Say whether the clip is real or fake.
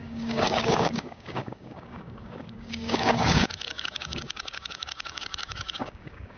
fake